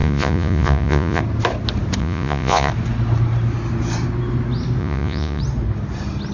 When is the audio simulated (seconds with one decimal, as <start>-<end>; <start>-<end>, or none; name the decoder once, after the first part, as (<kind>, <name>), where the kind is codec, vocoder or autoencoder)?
0.0-1.2 (vocoder, Vocos); 2.0-2.7; 4.8-5.4